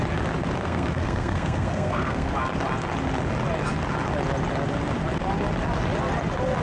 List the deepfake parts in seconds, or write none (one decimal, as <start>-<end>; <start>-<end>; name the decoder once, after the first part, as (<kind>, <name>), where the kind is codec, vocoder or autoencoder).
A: 0.6-2.3 (codec, SNAC)